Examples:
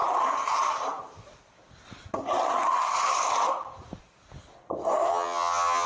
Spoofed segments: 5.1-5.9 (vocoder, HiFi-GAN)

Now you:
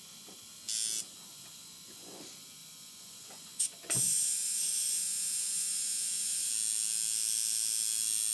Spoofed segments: 1.3-2.2 (vocoder, Vocos); 2.6-6.5

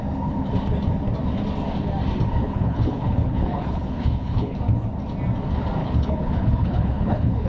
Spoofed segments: 2.4-4.6 (codec, HILCodec); 5.8-7.5

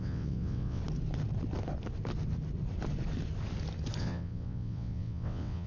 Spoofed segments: 0.0-0.8 (vocoder, WaveNeXt); 4.0-5.7